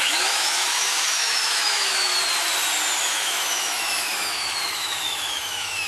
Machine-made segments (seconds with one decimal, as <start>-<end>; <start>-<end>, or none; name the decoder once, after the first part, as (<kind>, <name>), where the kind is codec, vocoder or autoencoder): 0.0-2.1 (autoencoder, DAC-VAE); 3.0-5.9